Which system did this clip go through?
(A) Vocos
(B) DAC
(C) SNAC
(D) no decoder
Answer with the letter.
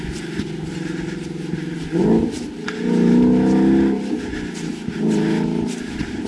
D